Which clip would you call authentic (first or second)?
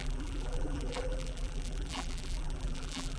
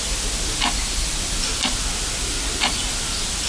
second